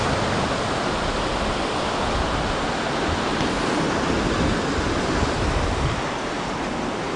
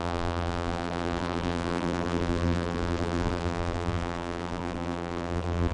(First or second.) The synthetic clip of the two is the second